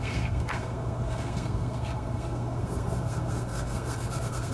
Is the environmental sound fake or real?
fake